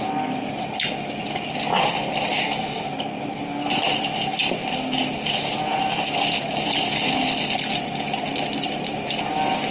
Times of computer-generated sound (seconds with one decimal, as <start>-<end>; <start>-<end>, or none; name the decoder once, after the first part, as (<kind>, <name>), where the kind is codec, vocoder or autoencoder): none